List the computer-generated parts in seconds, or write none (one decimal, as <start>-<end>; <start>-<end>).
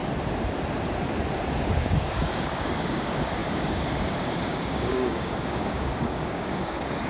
1.6-7.1